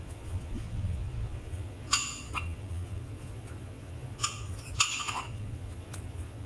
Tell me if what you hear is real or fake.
fake